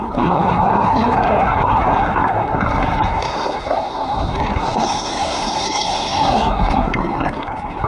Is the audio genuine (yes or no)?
no